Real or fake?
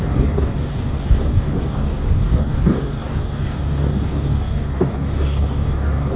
fake